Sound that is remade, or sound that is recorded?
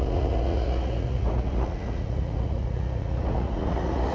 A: remade